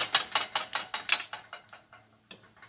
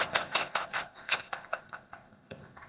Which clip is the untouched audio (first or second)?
first